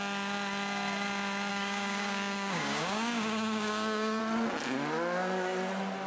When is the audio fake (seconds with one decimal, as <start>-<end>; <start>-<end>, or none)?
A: 1.5-4.2